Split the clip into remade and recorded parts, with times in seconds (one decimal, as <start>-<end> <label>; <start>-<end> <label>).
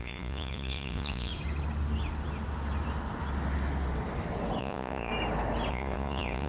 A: 0.0-1.3 remade; 1.3-4.6 recorded; 4.6-5.1 remade; 5.1-5.7 recorded; 5.7-6.5 remade